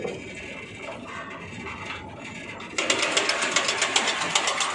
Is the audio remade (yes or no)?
no